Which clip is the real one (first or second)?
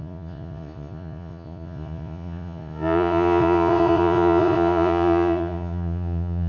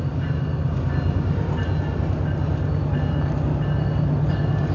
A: second